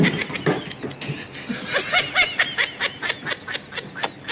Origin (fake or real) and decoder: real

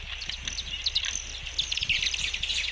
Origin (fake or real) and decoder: fake, vocoder, BigVGAN v2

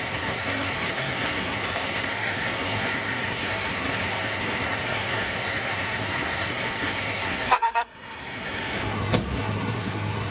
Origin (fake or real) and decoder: fake, codec, SNAC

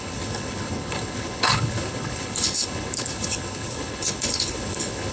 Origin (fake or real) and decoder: fake, codec, HILCodec